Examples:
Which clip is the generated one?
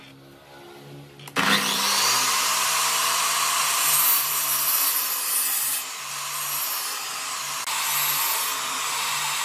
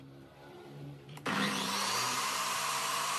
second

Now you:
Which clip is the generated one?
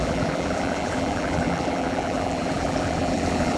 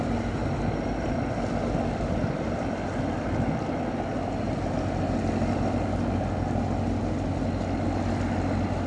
first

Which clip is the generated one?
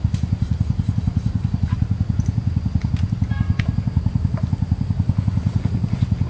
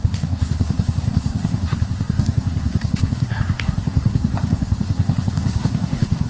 second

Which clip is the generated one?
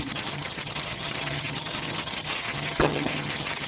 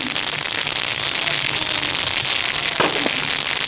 first